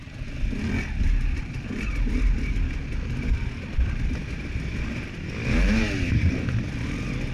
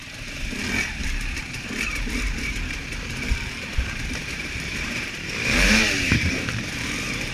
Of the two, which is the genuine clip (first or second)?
first